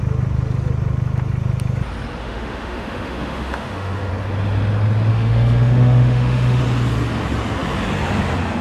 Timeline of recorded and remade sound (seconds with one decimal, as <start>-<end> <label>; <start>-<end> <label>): 0.0-2.2 recorded; 2.2-4.1 remade; 4.1-5.1 recorded; 5.1-6.6 remade; 6.6-8.6 recorded